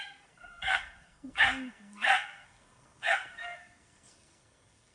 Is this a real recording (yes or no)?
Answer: no